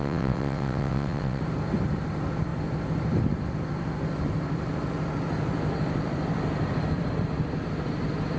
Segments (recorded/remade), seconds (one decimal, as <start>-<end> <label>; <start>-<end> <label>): 0.0-1.4 remade; 1.4-8.4 recorded